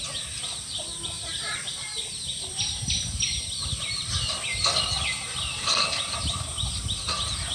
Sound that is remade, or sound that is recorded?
recorded